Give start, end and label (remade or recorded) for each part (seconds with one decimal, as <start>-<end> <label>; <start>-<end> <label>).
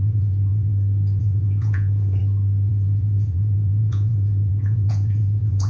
0.0-0.7 remade; 0.7-1.2 recorded; 1.2-2.2 remade; 2.2-2.7 recorded; 2.7-5.7 remade